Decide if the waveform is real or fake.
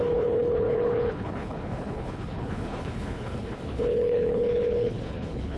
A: fake